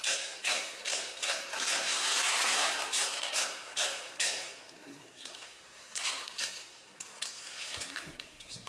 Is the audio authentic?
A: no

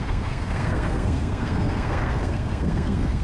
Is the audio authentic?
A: no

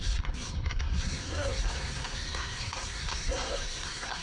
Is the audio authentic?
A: no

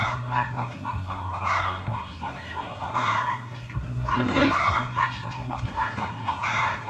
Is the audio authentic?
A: no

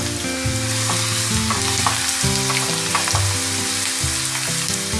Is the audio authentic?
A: yes